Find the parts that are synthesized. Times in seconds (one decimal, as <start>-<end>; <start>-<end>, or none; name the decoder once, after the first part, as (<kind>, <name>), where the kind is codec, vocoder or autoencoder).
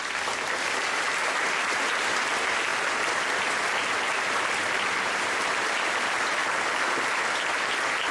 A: 2.7-5.1 (vocoder, BigVGAN v2)